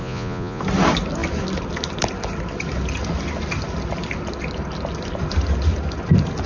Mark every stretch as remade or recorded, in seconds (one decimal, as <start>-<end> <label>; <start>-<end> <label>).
0.0-0.6 remade; 0.6-6.5 recorded